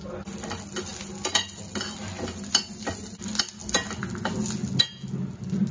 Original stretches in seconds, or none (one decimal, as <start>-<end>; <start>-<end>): 0.0-5.7